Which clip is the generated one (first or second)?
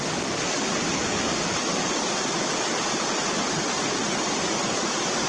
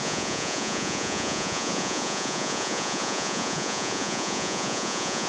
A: second